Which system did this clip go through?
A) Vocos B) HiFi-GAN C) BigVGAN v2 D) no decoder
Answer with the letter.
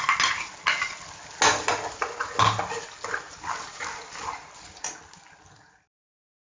D